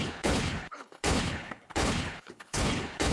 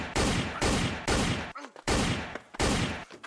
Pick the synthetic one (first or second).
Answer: first